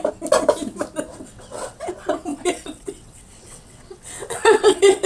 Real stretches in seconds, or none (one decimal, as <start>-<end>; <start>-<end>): 0.0-1.1; 1.9-2.3